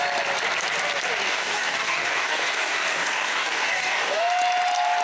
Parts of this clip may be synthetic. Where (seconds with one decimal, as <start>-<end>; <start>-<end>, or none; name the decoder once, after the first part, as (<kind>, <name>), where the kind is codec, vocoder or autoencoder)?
1.2-4.2 (codec, DAC)